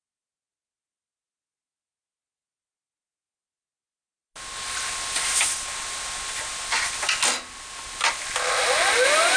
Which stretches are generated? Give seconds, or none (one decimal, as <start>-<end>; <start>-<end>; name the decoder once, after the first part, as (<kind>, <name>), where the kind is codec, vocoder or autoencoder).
none